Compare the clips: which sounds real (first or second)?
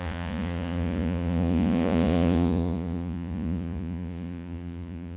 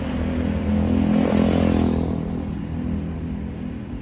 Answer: second